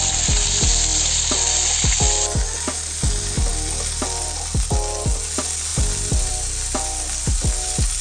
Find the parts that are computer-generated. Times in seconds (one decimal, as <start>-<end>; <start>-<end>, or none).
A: none